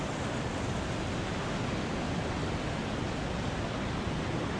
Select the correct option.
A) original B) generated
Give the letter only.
A